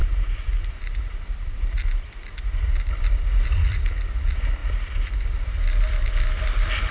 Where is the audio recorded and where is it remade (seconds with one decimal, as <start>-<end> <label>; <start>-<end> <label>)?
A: 0.0-1.0 remade; 1.0-6.9 recorded